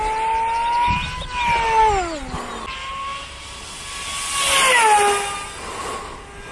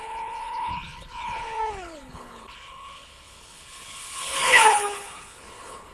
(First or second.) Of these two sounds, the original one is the first